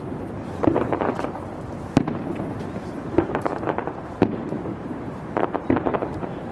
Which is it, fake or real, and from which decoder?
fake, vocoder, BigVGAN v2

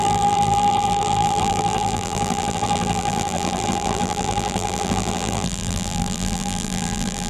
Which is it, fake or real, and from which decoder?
fake, vocoder, BigVGAN v2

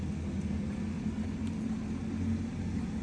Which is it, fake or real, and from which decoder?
real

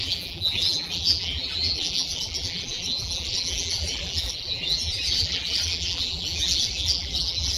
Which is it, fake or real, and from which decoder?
fake, vocoder, BigVGAN v2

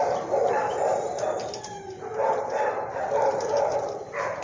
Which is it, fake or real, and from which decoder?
fake, vocoder, BigVGAN v2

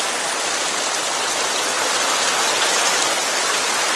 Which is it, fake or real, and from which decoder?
real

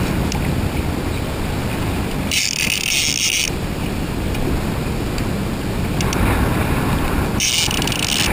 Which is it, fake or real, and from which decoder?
real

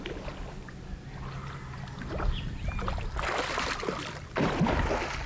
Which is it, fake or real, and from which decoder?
real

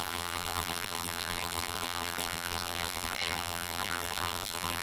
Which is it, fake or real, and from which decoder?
fake, vocoder, BigVGAN v2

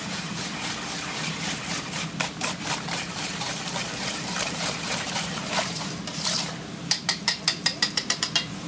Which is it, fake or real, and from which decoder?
fake, vocoder, BigVGAN v2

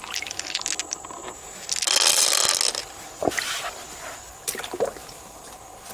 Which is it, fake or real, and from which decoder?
real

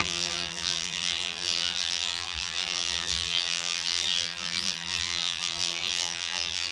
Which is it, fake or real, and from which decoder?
fake, vocoder, BigVGAN v2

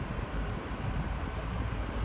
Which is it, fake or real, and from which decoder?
fake, vocoder, BigVGAN v2